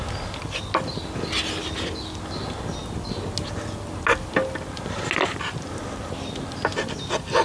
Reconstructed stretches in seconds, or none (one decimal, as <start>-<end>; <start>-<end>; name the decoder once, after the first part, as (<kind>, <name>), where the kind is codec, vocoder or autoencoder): none